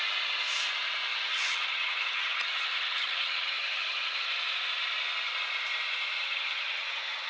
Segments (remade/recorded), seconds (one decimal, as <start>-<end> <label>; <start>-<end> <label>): 0.0-1.1 recorded; 1.1-4.3 remade; 4.3-6.2 recorded; 6.2-7.3 remade